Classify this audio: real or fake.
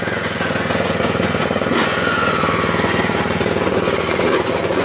fake